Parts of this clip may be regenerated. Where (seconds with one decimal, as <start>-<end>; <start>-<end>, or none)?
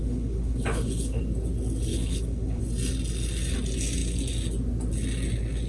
0.0-1.2; 1.9-2.6